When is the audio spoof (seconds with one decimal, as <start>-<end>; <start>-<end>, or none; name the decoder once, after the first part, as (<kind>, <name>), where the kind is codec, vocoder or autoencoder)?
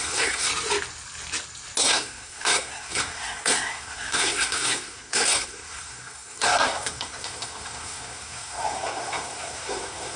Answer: 0.0-0.5 (codec, SNAC); 1.8-10.2